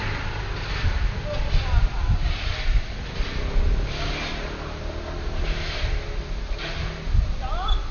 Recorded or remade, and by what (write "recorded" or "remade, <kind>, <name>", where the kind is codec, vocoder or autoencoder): recorded